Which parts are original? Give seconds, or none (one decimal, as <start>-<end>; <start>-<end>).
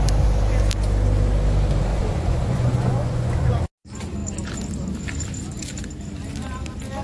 0.0-1.9; 3.5-7.0